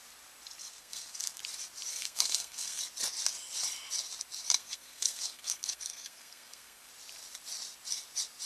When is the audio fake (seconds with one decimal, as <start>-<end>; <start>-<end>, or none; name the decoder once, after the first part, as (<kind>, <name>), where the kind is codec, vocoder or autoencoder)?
0.7-1.4 (codec, SNAC); 1.9-2.8; 4.6-6.9